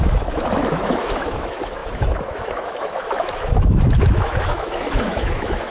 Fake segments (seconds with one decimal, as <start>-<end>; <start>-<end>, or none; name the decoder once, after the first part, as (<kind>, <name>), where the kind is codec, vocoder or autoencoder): 0.0-5.7 (autoencoder, DAC-VAE)